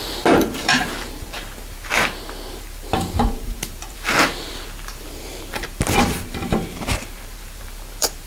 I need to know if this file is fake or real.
fake